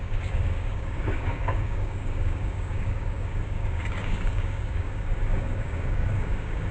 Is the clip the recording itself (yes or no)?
no